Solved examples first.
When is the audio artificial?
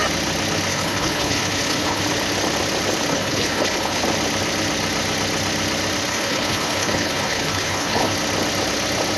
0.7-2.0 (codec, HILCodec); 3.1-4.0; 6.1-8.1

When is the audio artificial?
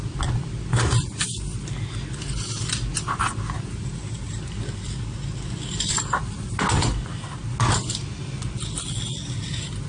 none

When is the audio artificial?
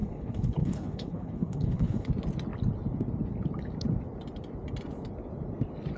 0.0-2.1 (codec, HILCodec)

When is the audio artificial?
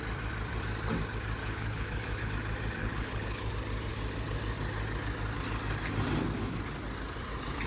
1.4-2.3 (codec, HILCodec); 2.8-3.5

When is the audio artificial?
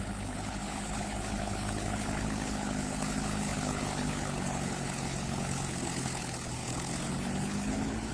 0.0-8.1 (codec, HILCodec)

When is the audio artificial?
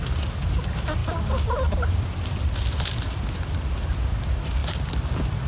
none